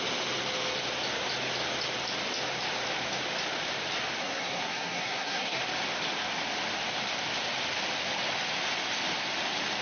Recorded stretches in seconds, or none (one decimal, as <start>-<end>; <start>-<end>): 0.0-4.2; 5.6-9.8